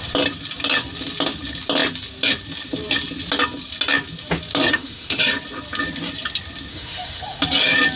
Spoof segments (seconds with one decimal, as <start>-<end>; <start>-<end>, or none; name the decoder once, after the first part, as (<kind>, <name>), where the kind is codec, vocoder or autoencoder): 4.7-5.2 (autoencoder, DAC-VAE); 6.7-7.4